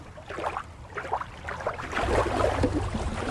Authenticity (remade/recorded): recorded